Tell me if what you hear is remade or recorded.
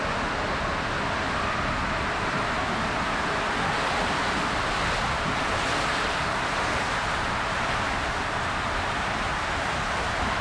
recorded